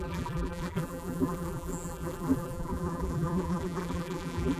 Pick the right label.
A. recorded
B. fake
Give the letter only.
B